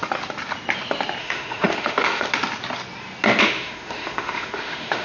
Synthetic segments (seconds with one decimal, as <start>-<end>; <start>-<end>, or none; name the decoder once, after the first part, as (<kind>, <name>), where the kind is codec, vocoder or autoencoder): 1.2-2.3 (autoencoder, DAC-VAE); 3.4-5.0